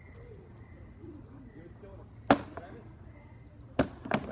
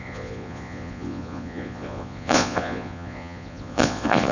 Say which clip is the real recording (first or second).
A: first